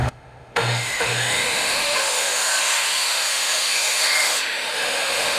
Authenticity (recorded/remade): remade